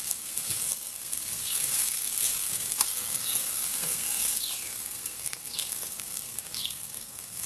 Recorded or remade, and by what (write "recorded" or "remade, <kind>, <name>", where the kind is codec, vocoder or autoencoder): remade, codec, SNAC